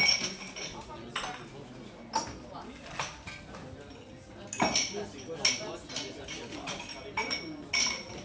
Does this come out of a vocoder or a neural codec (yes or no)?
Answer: no